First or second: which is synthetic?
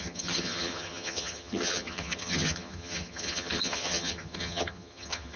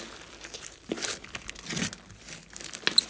first